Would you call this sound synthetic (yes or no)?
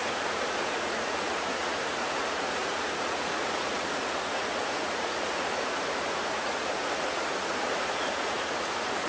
yes